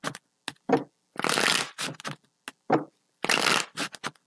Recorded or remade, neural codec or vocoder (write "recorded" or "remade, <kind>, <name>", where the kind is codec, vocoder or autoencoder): recorded